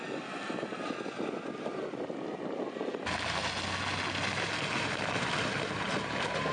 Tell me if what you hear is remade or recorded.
recorded